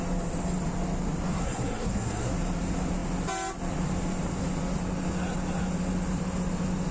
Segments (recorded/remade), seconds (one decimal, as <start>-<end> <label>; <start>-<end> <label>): 0.0-1.3 recorded; 1.3-2.3 remade; 2.3-6.9 recorded